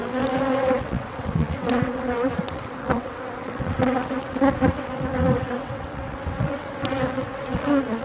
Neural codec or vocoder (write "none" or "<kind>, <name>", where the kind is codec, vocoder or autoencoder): vocoder, WaveNeXt